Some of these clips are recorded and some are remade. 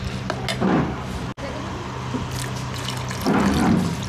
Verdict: recorded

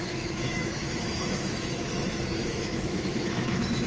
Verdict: remade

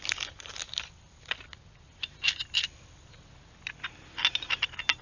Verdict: recorded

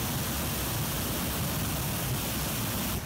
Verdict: recorded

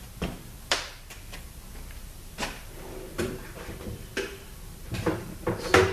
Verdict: remade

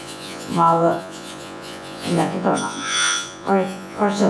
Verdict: remade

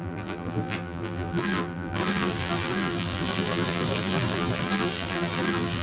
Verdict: remade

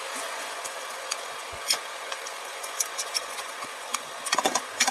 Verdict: remade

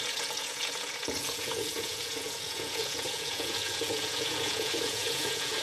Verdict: remade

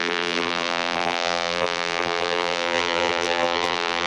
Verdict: remade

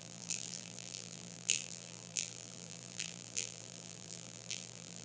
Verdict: remade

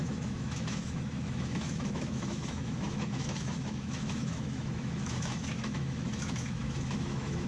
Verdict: remade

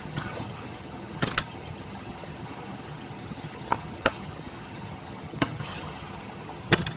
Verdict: remade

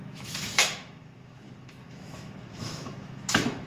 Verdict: remade